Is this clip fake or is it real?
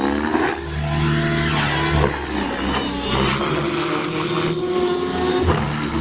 real